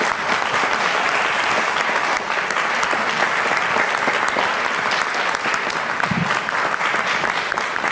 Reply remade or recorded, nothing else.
recorded